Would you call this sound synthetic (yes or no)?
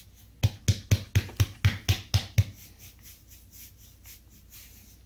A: no